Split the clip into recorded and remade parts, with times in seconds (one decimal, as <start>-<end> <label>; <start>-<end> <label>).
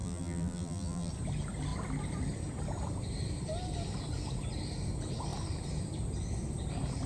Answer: 0.0-1.1 remade; 1.1-7.1 recorded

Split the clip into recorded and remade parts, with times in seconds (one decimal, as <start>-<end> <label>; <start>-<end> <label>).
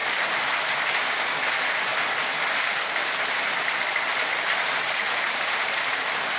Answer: 0.0-1.2 remade; 1.2-1.9 recorded; 1.9-5.2 remade; 5.2-6.4 recorded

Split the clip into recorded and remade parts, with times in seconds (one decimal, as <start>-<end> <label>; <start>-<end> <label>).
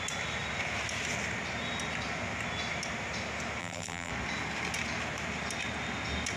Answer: 0.0-3.6 recorded; 3.6-4.1 remade; 4.1-6.4 recorded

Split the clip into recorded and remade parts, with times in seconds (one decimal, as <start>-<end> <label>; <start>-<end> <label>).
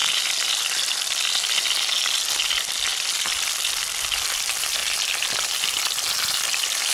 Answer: 0.0-1.5 remade; 1.5-2.9 recorded; 2.9-3.9 remade; 3.9-4.8 recorded; 4.8-6.9 remade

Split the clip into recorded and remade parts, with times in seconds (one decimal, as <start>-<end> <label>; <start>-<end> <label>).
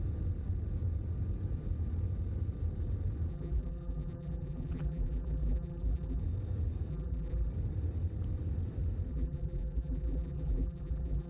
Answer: 0.0-3.3 recorded; 3.3-6.2 remade; 6.2-6.9 recorded; 6.9-7.5 remade; 7.5-9.1 recorded; 9.1-11.3 remade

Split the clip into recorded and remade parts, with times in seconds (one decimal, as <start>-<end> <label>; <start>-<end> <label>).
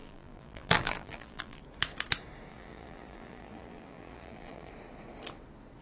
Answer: 0.0-1.6 remade; 1.6-2.5 recorded; 2.5-4.7 remade; 4.7-5.8 recorded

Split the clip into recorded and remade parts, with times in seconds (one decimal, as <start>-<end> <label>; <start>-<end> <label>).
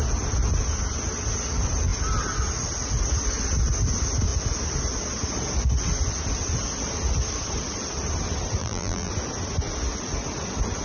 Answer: 0.0-8.6 recorded; 8.6-9.1 remade; 9.1-10.8 recorded